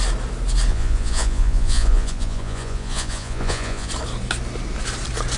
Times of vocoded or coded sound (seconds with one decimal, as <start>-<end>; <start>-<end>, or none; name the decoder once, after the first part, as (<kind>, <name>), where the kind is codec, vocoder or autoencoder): 0.7-3.9 (vocoder, Vocos)